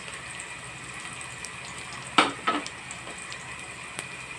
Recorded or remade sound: recorded